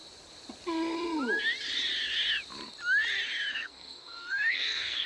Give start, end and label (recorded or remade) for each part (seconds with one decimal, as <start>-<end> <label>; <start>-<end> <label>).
0.0-3.5 recorded; 3.5-5.1 remade